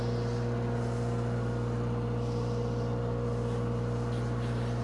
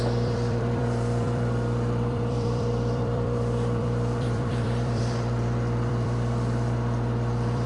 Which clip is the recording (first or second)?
first